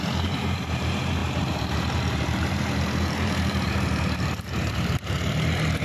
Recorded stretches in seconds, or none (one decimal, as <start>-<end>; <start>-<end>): none